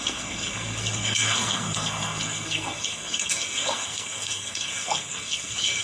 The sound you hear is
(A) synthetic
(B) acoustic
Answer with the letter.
A